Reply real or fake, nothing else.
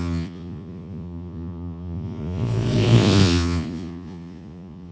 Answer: fake